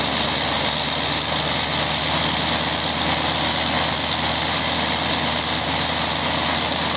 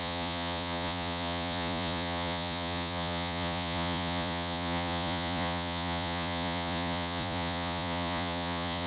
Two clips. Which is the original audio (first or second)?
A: first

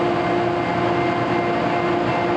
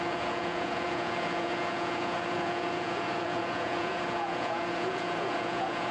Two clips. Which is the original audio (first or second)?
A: first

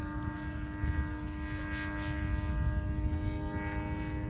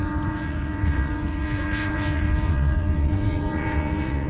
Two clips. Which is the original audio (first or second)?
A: first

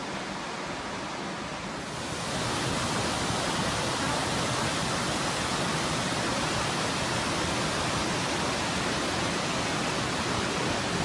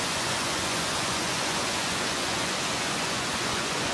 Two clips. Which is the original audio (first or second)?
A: first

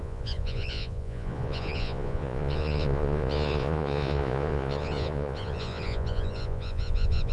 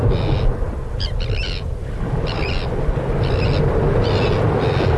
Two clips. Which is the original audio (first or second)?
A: second